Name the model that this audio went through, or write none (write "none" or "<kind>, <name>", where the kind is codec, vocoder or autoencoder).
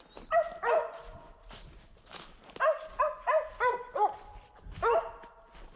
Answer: none